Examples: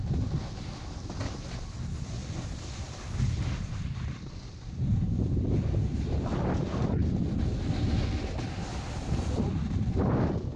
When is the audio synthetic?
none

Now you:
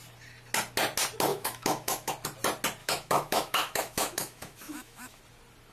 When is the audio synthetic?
1.3-2.1 (autoencoder, DAC-VAE); 2.8-5.2